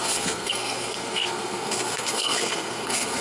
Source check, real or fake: fake